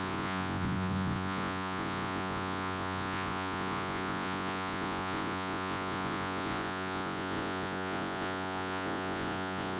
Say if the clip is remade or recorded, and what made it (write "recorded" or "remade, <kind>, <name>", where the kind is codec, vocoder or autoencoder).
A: remade, vocoder, Vocos